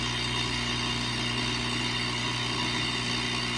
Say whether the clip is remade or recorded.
recorded